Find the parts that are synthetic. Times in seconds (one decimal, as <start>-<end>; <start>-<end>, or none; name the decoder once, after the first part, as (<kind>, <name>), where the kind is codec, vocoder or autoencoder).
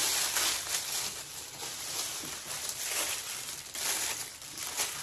none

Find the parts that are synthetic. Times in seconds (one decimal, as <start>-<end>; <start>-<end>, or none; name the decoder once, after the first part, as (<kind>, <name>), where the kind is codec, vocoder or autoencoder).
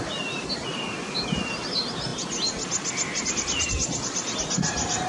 none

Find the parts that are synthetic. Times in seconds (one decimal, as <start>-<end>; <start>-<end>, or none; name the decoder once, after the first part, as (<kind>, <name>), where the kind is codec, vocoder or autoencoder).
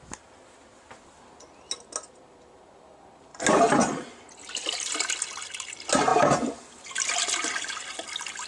none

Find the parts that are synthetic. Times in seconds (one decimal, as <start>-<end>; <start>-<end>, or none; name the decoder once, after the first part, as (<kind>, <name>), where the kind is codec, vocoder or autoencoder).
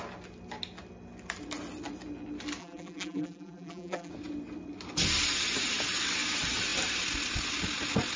2.6-4.1 (vocoder, BigVGAN v2)